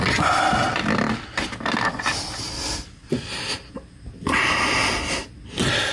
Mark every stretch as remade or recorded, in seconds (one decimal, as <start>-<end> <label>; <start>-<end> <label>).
0.0-5.9 recorded

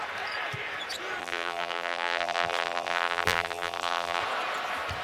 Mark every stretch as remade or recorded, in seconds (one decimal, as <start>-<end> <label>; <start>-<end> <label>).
0.0-1.2 recorded; 1.2-4.2 remade; 4.2-5.0 recorded

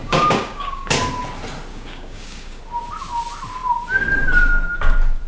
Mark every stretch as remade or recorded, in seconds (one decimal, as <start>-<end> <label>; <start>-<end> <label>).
0.0-0.9 remade; 0.9-1.7 recorded; 1.7-2.6 remade; 2.6-5.3 recorded

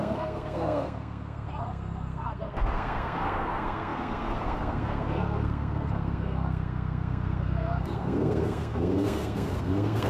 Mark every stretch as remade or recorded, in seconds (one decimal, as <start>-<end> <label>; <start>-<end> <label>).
0.0-10.1 remade

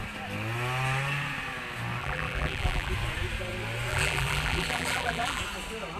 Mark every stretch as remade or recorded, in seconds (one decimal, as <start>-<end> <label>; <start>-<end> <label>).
0.0-2.0 recorded; 2.0-2.9 remade; 2.9-3.9 recorded; 3.9-5.4 remade; 5.4-6.0 recorded

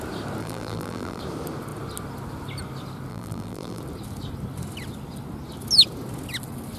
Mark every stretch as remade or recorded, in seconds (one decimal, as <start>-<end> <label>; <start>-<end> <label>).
0.0-0.4 recorded; 0.4-1.2 remade; 1.2-3.1 recorded; 3.1-3.8 remade; 3.8-6.8 recorded

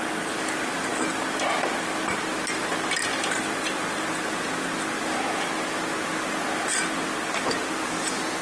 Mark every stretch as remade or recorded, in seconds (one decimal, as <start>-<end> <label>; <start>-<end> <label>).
0.0-8.4 recorded